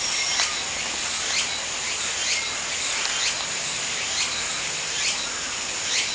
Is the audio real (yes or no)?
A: yes